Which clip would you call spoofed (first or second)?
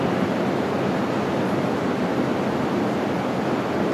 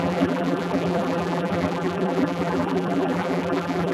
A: second